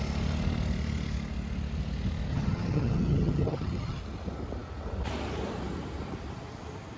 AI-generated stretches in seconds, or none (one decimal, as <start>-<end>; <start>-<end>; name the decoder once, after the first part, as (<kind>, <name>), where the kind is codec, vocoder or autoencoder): 2.3-4.0 (vocoder, HiFi-GAN)